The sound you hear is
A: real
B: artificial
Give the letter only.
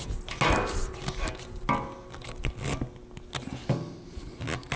A